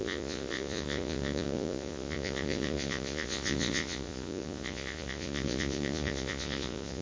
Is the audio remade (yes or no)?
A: yes